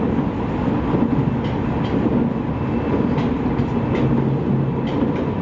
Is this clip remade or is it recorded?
recorded